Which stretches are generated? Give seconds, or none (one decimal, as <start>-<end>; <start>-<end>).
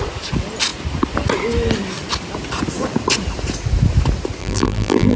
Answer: 4.4-5.2